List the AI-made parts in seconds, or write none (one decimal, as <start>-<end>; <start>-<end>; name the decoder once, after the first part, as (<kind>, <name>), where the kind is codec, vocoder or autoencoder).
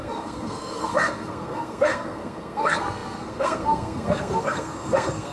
0.0-5.3 (codec, SNAC)